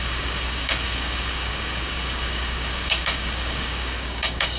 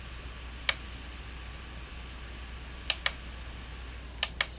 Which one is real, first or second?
second